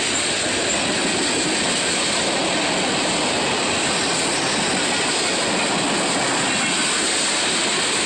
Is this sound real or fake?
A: real